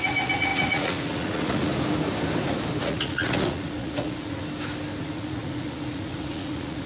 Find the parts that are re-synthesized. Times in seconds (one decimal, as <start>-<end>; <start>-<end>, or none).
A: 0.0-1.7; 2.8-4.4; 5.0-6.9

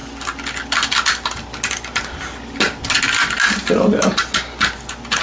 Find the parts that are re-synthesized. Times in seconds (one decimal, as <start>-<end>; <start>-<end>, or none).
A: none